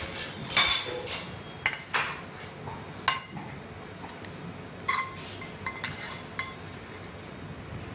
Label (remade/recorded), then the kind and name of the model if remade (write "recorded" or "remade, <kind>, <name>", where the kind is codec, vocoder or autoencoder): recorded